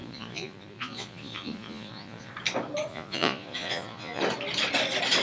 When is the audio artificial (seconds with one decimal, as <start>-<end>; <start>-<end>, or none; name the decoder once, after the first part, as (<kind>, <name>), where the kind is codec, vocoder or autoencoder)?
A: 0.0-2.3 (vocoder, Vocos); 2.9-4.2